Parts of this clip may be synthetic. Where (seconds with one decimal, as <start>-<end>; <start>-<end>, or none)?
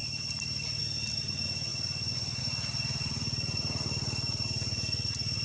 1.7-2.4